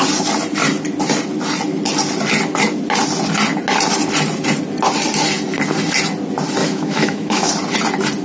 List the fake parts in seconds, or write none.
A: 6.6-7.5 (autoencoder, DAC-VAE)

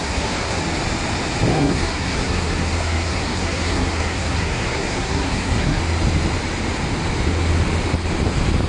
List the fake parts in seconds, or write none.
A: 0.0-0.6 (codec, SNAC); 1.5-5.8

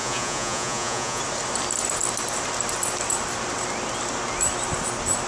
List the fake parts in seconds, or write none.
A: 0.0-1.2 (vocoder, Vocos)

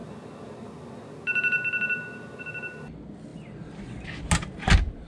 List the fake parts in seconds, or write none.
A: none

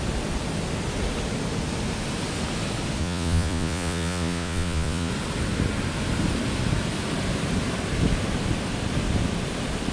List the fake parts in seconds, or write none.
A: 3.0-5.1 (vocoder, Vocos)

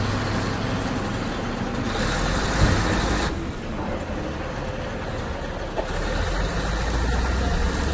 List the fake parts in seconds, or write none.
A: none

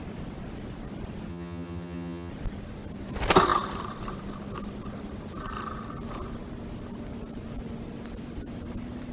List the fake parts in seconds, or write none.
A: 1.3-2.3 (vocoder, HiFi-GAN)

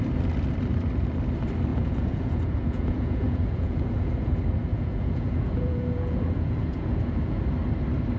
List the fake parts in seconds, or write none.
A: 1.7-4.3 (vocoder, Vocos); 4.7-7.4